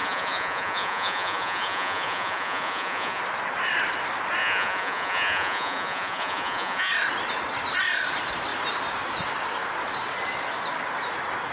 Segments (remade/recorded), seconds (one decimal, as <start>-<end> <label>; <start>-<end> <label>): 0.0-3.2 remade; 3.2-4.4 recorded; 4.4-6.9 remade; 6.9-11.5 recorded